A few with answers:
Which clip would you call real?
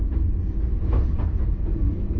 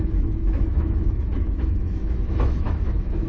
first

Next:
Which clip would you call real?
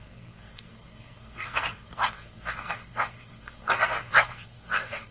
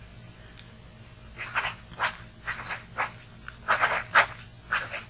second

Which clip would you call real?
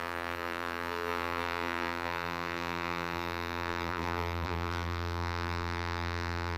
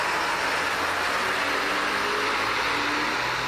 second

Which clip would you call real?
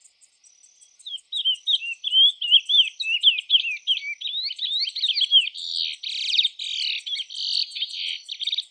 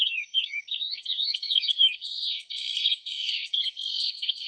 first